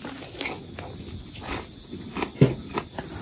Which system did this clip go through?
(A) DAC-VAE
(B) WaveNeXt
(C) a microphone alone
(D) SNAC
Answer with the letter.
C